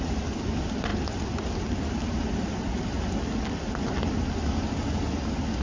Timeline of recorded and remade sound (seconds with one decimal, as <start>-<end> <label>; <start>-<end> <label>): 0.0-5.6 recorded